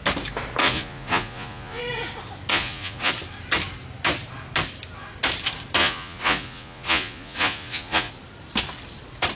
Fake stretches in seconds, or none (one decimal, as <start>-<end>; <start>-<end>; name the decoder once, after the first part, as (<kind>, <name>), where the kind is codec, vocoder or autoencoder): 0.6-1.8 (vocoder, Vocos); 2.5-3.1; 5.8-8.1